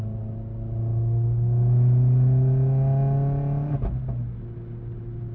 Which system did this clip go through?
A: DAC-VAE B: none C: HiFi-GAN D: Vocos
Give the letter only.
B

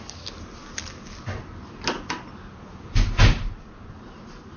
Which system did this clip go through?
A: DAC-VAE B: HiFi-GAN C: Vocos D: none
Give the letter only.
D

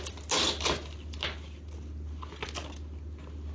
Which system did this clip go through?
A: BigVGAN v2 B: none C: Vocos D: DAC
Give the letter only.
B